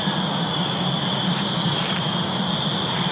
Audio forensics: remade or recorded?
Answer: recorded